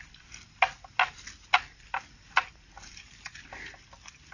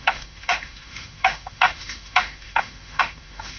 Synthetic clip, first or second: second